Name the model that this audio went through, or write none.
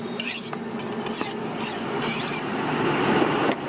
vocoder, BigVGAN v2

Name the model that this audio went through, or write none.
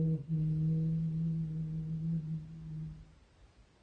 none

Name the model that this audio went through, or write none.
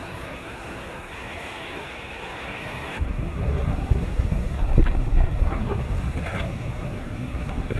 codec, SNAC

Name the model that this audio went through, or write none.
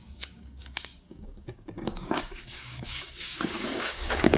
codec, DAC